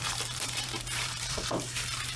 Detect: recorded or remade remade